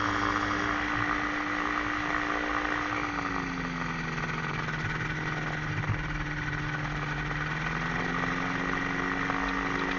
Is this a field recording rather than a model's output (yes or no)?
yes